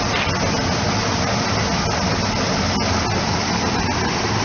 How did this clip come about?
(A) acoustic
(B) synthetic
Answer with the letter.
A